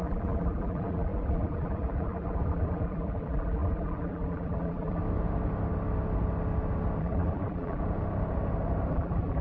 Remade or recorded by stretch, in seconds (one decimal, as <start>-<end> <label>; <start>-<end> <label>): 0.0-5.0 remade; 5.0-7.0 recorded; 7.0-7.8 remade; 7.8-8.9 recorded; 8.9-9.4 remade